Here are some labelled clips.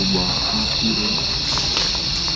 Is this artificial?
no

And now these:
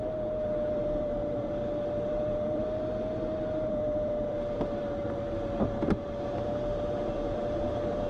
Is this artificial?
yes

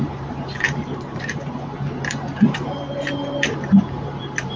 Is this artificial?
yes